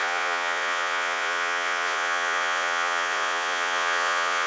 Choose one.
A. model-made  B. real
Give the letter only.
A